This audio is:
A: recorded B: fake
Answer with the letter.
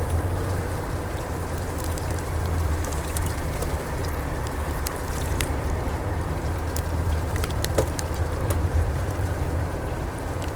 B